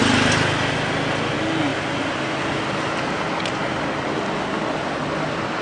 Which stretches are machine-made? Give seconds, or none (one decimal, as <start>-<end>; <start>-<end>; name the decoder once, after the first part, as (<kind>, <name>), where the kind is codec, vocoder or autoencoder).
none